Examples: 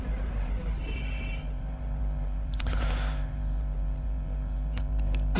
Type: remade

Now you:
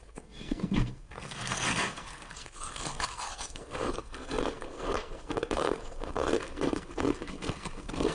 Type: remade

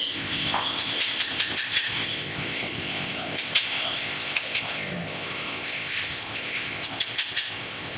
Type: remade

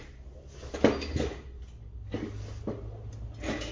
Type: recorded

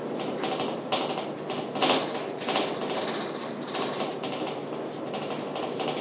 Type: recorded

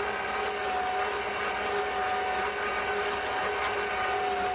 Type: recorded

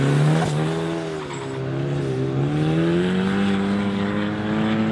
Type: recorded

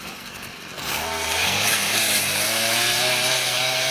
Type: remade